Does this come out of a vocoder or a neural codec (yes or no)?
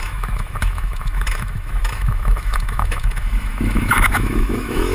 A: yes